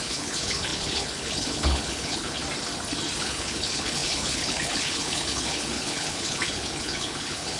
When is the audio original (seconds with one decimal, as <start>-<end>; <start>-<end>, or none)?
2.4-3.2

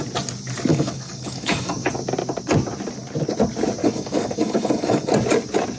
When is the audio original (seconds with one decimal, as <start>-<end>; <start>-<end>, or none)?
0.0-0.7; 1.9-3.8; 5.1-5.8

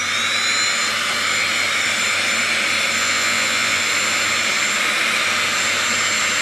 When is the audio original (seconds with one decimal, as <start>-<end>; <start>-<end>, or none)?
0.0-3.0; 3.8-6.4

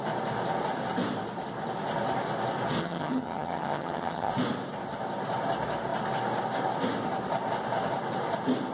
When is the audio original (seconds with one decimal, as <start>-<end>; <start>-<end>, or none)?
0.0-2.8; 4.3-8.7

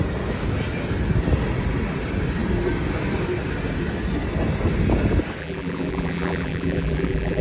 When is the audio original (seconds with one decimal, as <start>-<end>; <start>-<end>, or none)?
0.0-5.4

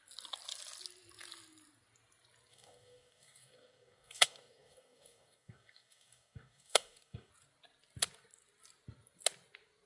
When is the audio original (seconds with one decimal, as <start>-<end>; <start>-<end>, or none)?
0.0-2.5; 7.3-9.9